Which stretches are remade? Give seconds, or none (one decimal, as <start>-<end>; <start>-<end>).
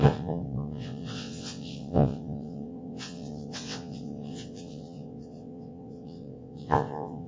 0.0-7.3